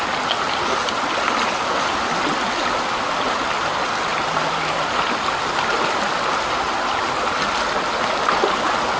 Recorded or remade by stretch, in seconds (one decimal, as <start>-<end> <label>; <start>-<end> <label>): 0.0-4.1 recorded; 4.1-5.0 remade; 5.0-9.0 recorded